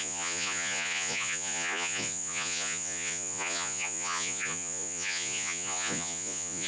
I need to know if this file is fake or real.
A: fake